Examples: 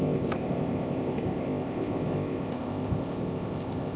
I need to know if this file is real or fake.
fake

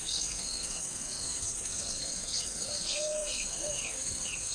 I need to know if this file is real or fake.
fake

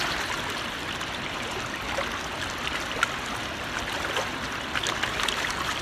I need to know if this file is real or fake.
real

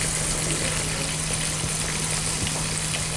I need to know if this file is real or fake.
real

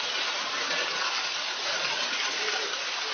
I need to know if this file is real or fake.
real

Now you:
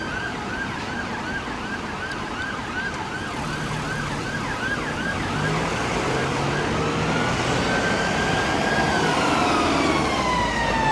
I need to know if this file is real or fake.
real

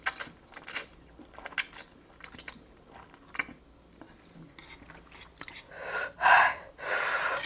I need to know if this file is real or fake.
real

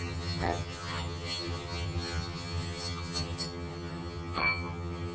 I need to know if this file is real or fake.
fake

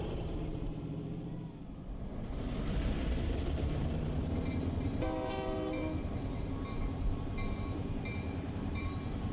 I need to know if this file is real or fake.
fake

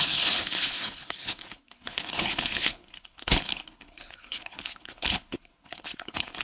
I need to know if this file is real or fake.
fake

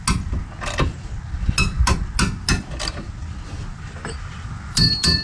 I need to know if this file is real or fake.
real